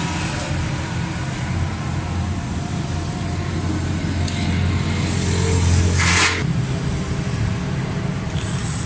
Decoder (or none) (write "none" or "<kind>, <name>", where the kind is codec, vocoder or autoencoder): none